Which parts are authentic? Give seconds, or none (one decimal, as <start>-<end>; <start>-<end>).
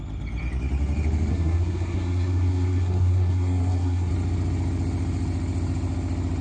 0.0-1.3; 4.1-6.4